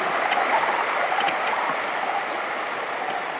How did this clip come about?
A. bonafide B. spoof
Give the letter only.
A